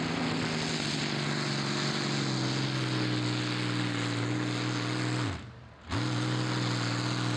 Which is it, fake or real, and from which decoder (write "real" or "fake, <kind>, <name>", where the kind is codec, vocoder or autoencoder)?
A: real